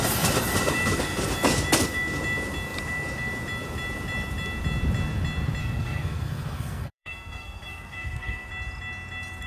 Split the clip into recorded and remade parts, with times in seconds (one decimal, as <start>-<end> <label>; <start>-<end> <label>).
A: 0.0-5.6 recorded; 5.6-8.5 remade; 8.5-9.5 recorded